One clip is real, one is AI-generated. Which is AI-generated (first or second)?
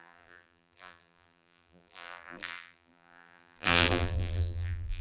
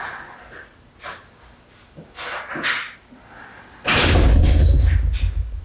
first